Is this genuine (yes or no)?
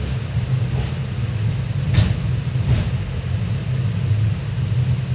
yes